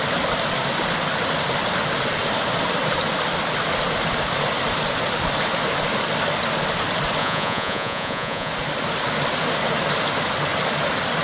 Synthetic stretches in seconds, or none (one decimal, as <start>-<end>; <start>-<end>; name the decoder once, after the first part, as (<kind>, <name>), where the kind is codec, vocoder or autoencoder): 7.2-8.5 (vocoder, Vocos)